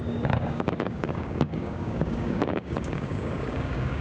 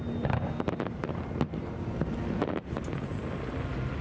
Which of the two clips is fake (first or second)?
first